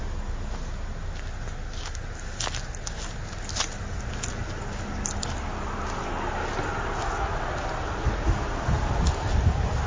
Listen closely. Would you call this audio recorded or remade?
recorded